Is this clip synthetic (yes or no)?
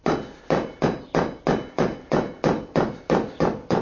yes